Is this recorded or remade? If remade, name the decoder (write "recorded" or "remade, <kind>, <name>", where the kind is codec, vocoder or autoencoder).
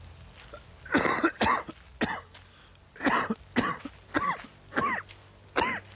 recorded